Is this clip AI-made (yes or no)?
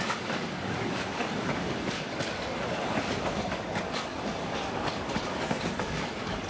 yes